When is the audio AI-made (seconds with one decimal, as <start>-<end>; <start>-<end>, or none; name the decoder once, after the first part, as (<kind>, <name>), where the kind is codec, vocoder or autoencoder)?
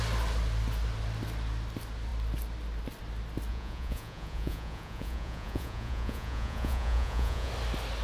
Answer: 3.5-7.5 (vocoder, Vocos)